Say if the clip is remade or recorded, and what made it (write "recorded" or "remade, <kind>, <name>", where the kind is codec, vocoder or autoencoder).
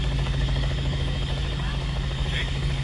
remade, codec, DAC